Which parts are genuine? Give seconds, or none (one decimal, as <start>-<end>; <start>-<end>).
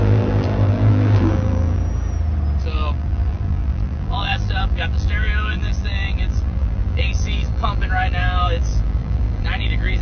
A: 1.8-2.6